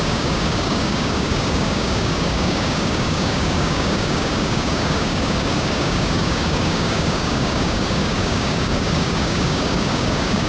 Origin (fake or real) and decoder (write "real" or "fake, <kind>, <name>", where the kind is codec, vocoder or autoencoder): fake, codec, DAC